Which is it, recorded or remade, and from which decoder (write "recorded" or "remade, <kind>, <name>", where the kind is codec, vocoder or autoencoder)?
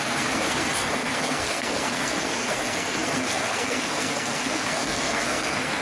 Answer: remade, codec, SNAC